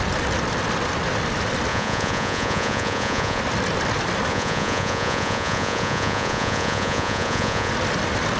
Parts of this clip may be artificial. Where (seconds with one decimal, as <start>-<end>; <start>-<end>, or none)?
1.7-3.4; 4.3-7.7